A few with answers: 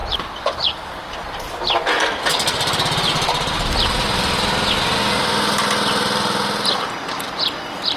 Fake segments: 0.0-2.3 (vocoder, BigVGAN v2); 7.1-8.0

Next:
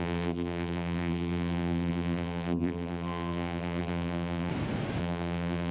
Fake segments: 0.0-4.5 (vocoder, BigVGAN v2); 5.0-5.7